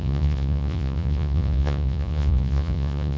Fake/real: fake